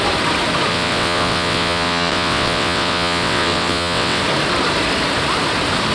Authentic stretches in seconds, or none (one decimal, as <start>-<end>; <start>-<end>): 0.0-0.7; 4.2-5.9